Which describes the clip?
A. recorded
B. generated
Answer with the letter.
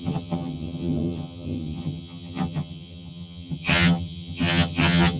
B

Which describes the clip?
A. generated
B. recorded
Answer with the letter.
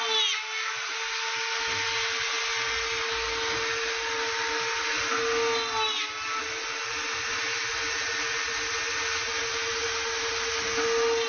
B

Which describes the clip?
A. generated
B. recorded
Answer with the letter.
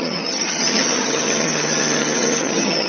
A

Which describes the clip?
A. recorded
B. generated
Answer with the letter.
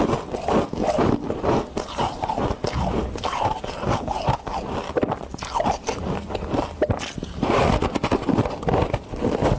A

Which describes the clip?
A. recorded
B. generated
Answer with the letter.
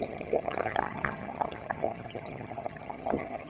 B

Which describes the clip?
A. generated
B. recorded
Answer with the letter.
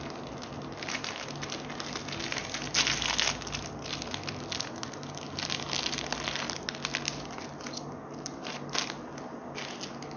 B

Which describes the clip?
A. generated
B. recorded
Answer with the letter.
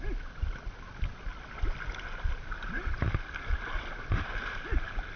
B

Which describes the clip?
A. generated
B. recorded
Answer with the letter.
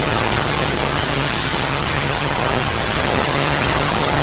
A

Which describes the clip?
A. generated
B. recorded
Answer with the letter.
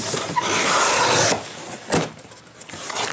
B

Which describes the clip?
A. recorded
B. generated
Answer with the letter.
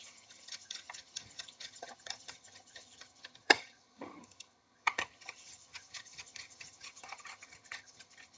B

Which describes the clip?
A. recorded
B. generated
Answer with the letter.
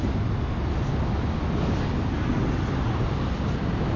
A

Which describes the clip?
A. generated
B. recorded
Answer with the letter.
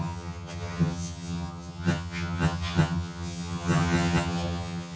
A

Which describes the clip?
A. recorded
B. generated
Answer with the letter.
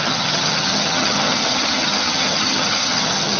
B